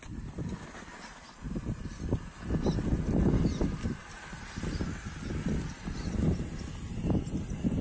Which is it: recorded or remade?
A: recorded